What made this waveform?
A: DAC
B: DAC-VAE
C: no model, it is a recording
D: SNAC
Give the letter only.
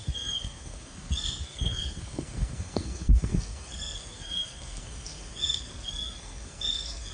D